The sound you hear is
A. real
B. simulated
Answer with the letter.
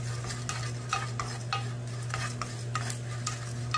A